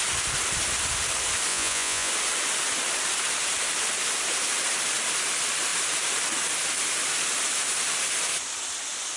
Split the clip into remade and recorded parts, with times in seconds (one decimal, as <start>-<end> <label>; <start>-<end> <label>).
0.0-1.5 recorded; 1.5-2.1 remade; 2.1-9.2 recorded